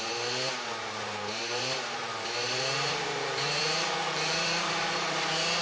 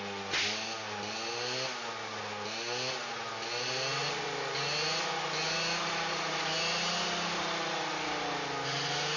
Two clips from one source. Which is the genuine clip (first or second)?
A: second